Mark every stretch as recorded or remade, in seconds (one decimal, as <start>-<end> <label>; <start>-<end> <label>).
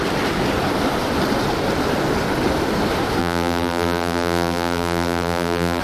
0.0-3.2 recorded; 3.2-5.8 remade